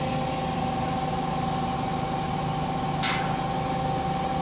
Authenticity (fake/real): real